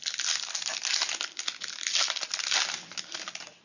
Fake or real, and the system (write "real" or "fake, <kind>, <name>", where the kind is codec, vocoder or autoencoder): real